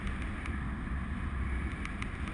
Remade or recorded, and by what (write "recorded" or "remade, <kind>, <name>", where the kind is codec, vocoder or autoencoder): recorded